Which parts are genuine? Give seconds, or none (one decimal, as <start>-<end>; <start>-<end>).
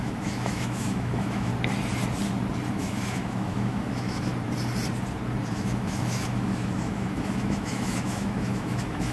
1.5-2.7; 4.3-5.5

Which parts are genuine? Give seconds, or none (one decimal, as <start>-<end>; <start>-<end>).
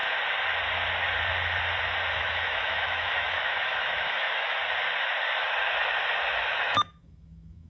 0.0-2.1; 4.6-6.5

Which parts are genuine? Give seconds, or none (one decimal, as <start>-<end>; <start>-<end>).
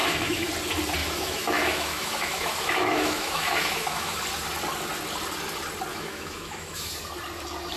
0.5-1.0; 4.2-5.9; 6.9-7.8